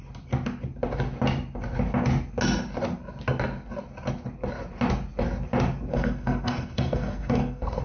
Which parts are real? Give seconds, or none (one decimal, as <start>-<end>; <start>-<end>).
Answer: 0.0-5.9